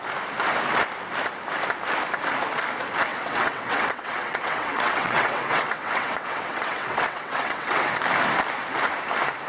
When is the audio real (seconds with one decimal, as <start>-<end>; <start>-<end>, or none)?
0.0-3.1; 8.0-9.5

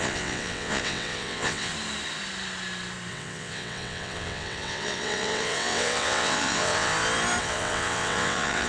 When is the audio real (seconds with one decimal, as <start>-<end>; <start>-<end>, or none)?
1.7-3.1; 6.9-7.4

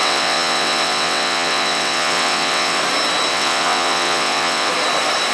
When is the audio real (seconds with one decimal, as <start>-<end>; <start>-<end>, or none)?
2.8-3.3; 4.7-5.3

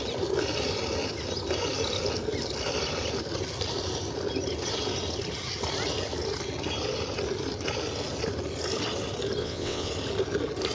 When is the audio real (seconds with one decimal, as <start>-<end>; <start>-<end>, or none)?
0.0-9.4; 9.9-10.7

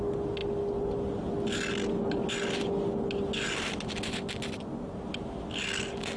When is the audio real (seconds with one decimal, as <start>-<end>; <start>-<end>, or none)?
0.0-6.2

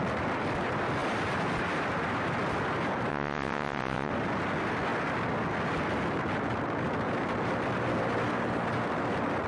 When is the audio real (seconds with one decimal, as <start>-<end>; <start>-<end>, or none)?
0.0-3.1; 4.1-9.5

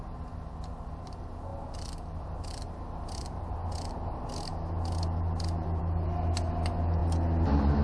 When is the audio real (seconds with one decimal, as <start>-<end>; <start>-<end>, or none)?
0.0-7.8